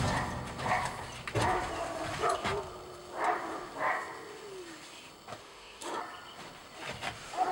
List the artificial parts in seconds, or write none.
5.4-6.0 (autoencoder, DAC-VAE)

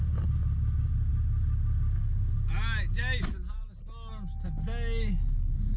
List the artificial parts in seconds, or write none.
none

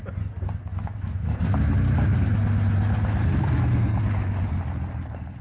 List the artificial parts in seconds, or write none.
0.7-1.4 (autoencoder, DAC-VAE); 3.3-4.0

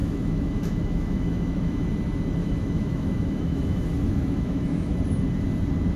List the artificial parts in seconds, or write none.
0.0-1.9 (autoencoder, DAC-VAE); 2.4-5.0

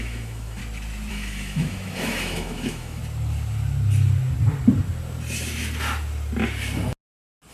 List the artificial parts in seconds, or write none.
0.0-0.6 (autoencoder, DAC-VAE); 1.1-3.0

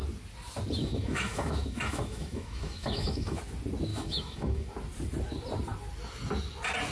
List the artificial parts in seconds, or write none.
0.8-3.4 (autoencoder, DAC-VAE); 3.9-4.7

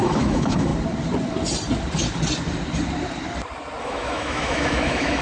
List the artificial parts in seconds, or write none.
0.0-0.7 (autoencoder, DAC-VAE); 3.8-5.2